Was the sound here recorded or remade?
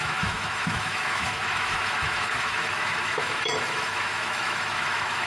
remade